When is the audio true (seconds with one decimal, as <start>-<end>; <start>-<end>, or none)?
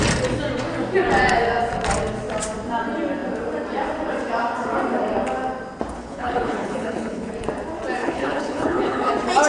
0.0-6.0; 7.3-8.0; 9.1-9.5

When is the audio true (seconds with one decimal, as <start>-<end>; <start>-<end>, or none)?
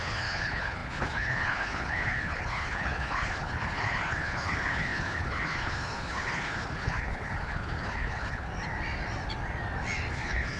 8.5-10.1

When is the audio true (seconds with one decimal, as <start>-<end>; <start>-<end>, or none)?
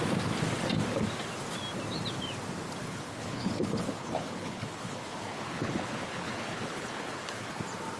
0.0-2.8; 7.6-8.0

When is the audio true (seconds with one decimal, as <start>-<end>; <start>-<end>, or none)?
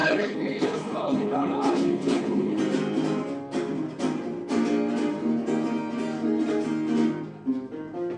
2.6-8.2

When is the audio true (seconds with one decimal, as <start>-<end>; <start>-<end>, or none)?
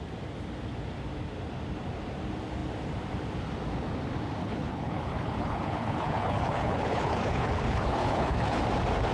0.0-4.4; 8.6-9.1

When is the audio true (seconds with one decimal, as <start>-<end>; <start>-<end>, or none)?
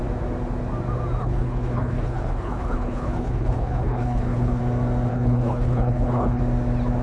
0.0-1.2; 4.6-5.1; 6.4-7.0